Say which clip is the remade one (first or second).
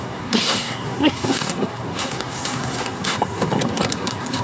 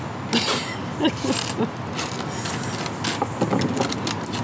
first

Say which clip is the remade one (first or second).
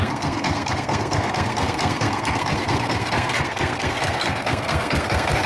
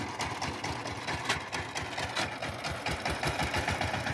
first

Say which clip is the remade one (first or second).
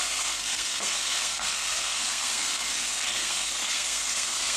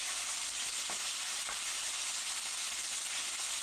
first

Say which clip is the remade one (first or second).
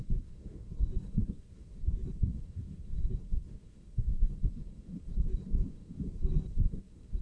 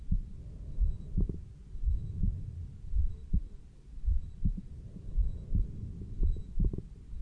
first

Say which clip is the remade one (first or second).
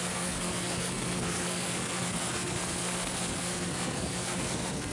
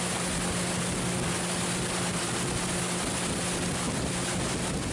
first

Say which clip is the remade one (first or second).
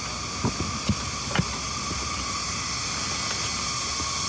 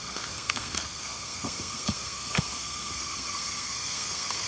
second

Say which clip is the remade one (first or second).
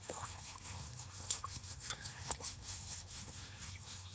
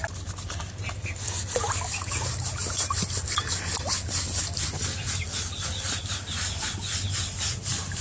first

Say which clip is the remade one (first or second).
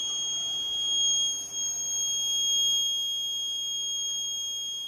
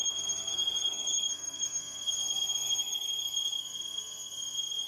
second